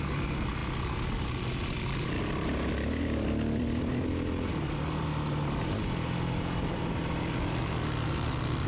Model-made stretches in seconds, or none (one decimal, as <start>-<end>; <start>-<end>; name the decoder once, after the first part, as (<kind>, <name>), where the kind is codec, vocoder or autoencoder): none